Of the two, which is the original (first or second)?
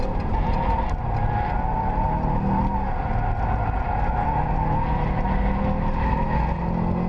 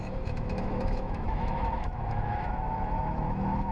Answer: first